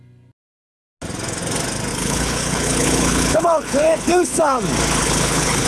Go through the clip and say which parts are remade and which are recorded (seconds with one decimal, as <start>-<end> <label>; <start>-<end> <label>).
0.0-1.9 recorded; 1.9-4.6 remade; 4.6-5.0 recorded; 5.0-5.7 remade